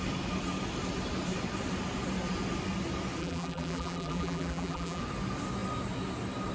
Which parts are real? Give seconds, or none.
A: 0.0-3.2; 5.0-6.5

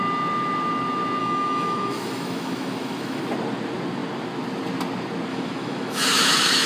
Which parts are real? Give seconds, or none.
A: 0.0-1.2; 3.2-5.3

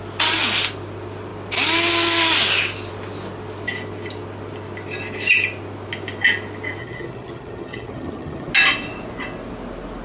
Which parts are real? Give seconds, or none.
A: 0.0-6.8; 8.5-10.0

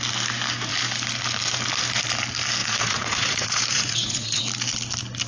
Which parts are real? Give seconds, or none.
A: 0.0-2.6; 4.4-5.3

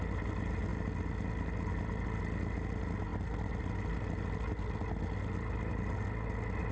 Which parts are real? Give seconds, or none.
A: 0.0-6.7

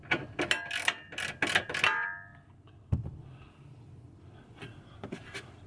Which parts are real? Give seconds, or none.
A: 0.0-5.7